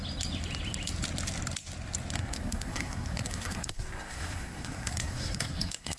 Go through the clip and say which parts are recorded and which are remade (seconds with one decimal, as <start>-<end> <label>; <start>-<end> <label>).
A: 0.0-2.2 recorded; 2.2-6.0 remade